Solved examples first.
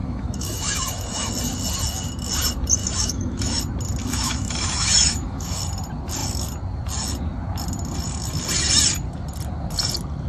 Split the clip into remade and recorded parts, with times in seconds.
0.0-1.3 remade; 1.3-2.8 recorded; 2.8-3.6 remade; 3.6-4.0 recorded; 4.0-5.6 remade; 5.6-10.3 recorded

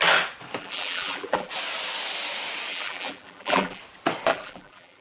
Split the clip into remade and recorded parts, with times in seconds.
0.0-0.6 recorded; 0.6-1.5 remade; 1.5-2.7 recorded; 2.7-3.8 remade; 3.8-4.3 recorded; 4.3-5.0 remade

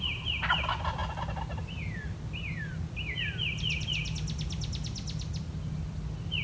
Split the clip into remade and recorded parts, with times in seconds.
0.0-6.4 recorded